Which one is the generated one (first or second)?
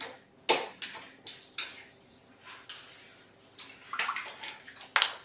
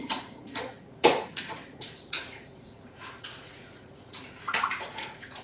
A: second